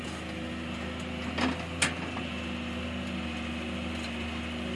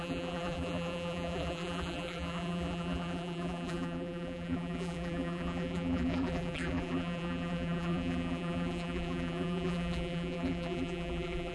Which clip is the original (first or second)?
first